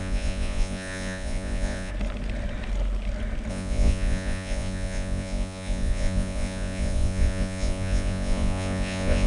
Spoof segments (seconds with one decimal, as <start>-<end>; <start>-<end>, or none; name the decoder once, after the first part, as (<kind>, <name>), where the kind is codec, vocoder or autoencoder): 0.0-1.9 (vocoder, Vocos); 3.5-9.3